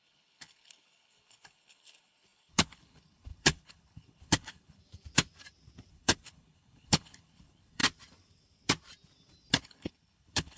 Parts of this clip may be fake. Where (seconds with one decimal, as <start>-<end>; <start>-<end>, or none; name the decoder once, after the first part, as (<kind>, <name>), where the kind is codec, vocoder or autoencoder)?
0.0-4.8 (codec, HILCodec); 5.9-7.8; 9.6-10.6